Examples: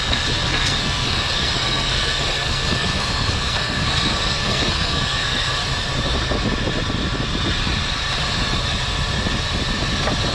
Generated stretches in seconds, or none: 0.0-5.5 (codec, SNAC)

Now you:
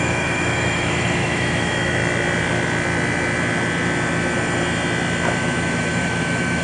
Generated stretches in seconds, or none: 0.0-2.0 (autoencoder, DAC-VAE); 5.4-6.6

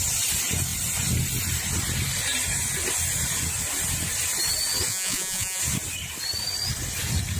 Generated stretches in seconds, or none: 4.9-5.6 (vocoder, Vocos)

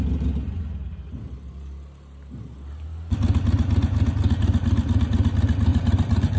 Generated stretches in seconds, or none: 5.7-6.4 (vocoder, BigVGAN v2)

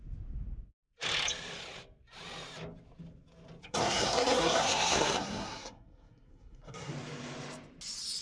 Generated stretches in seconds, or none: 3.6-6.9 (codec, SNAC)

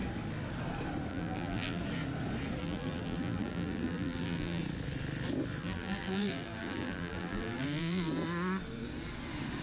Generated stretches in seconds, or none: 1.1-1.8 (vocoder, BigVGAN v2); 2.6-4.6; 5.6-8.1

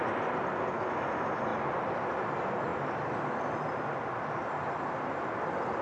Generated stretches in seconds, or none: none